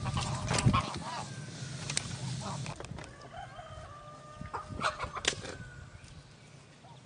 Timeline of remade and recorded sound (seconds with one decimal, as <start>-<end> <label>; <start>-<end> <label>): 0.0-7.1 recorded